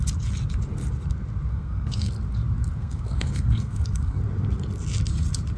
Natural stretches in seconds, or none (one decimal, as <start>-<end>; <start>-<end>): 0.0-1.5; 2.1-2.8; 4.2-5.6